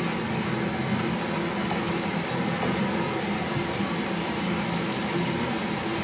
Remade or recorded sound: recorded